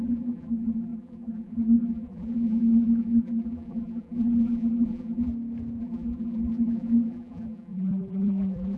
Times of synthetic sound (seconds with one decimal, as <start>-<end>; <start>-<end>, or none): 0.0-5.3; 5.8-8.8